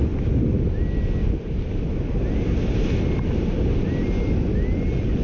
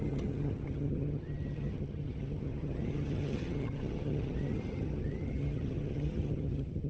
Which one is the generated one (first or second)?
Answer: second